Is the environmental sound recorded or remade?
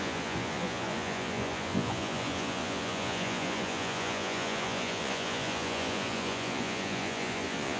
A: remade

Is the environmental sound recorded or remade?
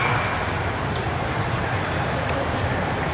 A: recorded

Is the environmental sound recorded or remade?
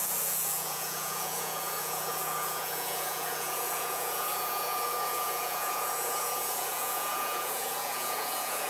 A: remade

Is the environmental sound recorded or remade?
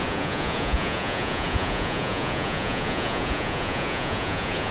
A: remade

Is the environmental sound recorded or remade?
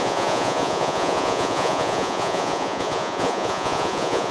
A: remade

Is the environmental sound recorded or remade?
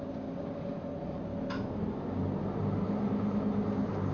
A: recorded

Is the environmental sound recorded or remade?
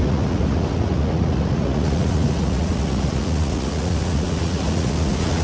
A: remade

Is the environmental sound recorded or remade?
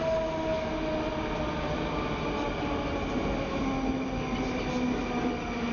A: recorded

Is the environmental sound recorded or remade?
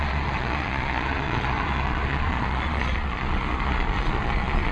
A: remade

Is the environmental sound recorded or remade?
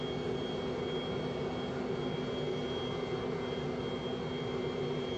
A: recorded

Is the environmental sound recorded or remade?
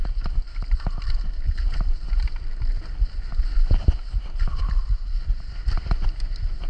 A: recorded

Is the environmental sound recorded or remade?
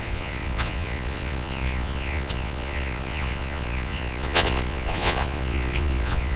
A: remade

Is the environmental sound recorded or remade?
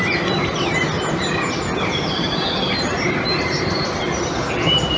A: recorded